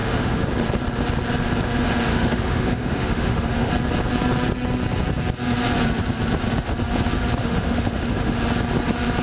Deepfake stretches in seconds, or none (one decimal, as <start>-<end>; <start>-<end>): 0.0-0.5; 2.1-3.7; 7.4-8.4